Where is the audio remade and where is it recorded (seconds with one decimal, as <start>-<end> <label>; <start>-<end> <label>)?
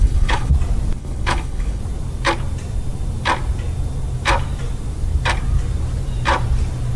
0.0-0.5 remade; 0.5-1.0 recorded; 1.0-1.8 remade; 1.8-7.0 recorded